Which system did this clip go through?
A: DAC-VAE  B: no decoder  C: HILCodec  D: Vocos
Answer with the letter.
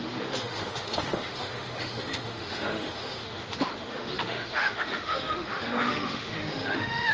A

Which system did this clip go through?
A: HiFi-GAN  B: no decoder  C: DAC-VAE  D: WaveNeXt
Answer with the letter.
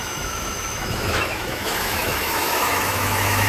C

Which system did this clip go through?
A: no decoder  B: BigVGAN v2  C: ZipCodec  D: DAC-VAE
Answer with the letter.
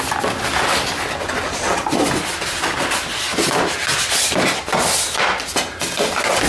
A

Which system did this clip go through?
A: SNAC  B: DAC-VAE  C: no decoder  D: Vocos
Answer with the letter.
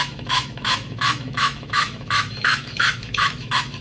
B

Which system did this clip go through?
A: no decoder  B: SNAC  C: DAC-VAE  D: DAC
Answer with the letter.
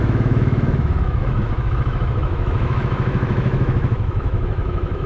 C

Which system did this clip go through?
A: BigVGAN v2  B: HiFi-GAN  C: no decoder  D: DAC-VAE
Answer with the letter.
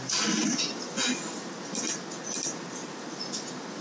C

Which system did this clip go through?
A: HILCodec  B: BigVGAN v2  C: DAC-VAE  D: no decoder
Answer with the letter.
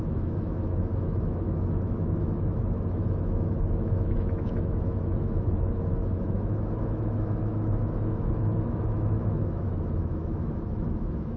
C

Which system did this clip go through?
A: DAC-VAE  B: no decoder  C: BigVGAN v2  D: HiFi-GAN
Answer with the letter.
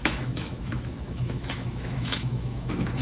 A